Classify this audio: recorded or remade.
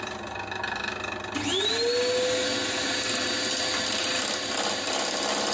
recorded